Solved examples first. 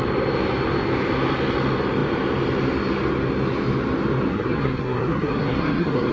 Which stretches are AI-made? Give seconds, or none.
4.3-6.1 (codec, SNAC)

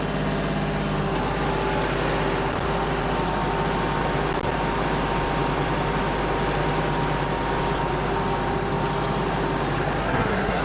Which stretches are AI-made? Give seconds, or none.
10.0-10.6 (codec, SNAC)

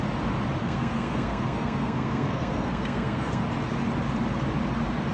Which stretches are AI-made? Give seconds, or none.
0.6-3.4 (codec, SNAC)

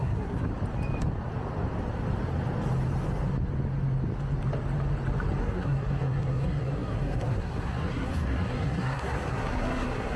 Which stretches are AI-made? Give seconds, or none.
0.0-0.5 (codec, SNAC); 5.4-10.2

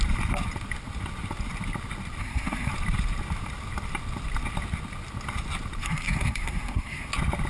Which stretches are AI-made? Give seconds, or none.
2.2-2.7 (codec, SNAC); 5.8-7.1